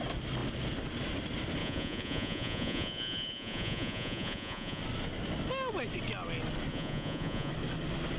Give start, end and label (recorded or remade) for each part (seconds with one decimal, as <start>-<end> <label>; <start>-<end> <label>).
0.0-1.6 recorded; 1.6-4.8 remade; 4.8-6.7 recorded; 6.7-7.5 remade; 7.5-8.2 recorded